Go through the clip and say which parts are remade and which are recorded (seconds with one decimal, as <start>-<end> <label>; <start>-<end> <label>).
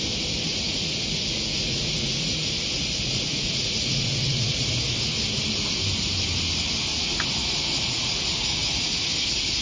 0.0-0.5 recorded; 0.5-4.7 remade; 4.7-6.9 recorded; 6.9-9.1 remade; 9.1-9.6 recorded